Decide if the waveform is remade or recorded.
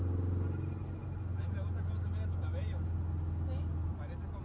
recorded